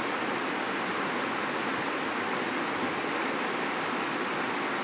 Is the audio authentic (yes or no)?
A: yes